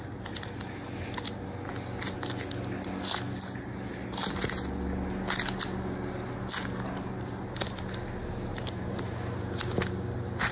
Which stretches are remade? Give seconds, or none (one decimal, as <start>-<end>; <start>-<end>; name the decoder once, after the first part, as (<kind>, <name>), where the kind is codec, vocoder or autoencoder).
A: 8.5-9.6 (vocoder, BigVGAN v2)